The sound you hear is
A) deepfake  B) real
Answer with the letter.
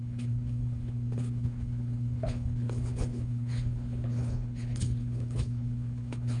A